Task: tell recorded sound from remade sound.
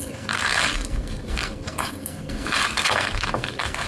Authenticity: remade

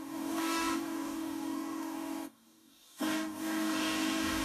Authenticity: remade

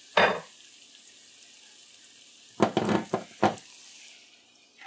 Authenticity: recorded